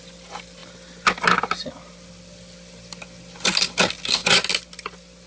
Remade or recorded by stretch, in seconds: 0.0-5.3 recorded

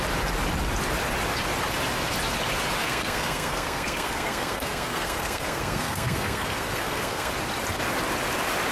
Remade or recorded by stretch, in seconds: 0.0-2.8 recorded; 2.8-7.3 remade; 7.3-8.7 recorded

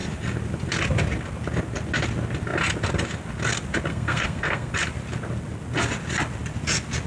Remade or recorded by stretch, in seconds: 0.0-3.9 recorded; 3.9-4.7 remade; 4.7-7.1 recorded

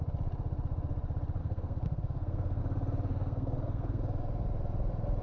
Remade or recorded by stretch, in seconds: 0.0-1.4 recorded; 1.4-2.6 remade; 2.6-3.1 recorded; 3.1-4.0 remade; 4.0-5.2 recorded